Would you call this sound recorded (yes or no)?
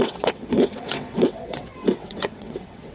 no